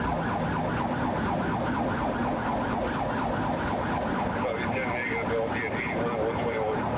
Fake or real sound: real